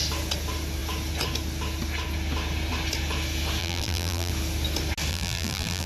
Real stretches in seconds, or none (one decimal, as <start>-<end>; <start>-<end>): 0.0-3.6; 4.3-5.1